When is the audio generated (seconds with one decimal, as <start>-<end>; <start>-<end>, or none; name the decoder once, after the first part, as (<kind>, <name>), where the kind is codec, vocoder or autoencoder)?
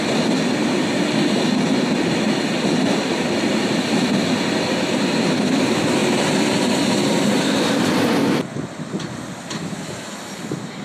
none